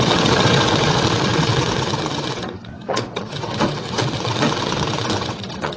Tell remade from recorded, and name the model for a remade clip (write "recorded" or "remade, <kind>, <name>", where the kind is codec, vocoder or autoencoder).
remade, vocoder, WaveNeXt